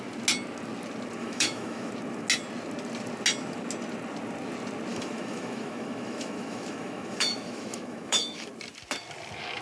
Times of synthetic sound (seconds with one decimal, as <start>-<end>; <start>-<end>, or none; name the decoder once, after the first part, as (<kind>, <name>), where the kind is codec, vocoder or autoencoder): 1.2-1.9 (autoencoder, DAC-VAE); 4.9-8.5